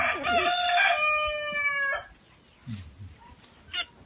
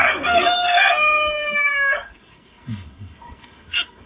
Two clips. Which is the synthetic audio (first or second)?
second